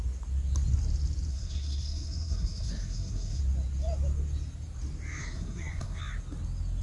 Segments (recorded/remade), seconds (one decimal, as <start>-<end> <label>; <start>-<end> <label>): 0.0-1.3 recorded; 1.3-3.4 remade; 3.4-5.2 recorded; 5.2-6.0 remade; 6.0-6.8 recorded